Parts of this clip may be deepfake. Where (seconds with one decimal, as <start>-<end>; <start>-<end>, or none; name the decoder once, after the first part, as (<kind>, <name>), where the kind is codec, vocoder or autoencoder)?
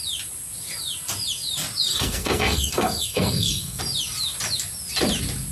1.9-3.8 (codec, SNAC)